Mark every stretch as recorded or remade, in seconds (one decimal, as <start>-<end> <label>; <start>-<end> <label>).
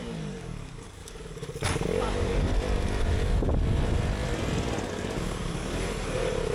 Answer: 0.0-2.5 remade; 2.5-4.9 recorded; 4.9-6.5 remade